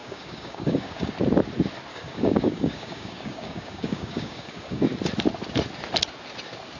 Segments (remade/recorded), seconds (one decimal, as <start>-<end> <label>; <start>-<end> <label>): 0.0-1.1 remade; 1.1-1.9 recorded; 1.9-4.8 remade; 4.8-6.8 recorded